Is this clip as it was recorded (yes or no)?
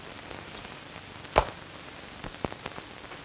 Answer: yes